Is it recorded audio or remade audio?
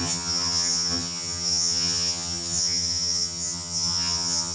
remade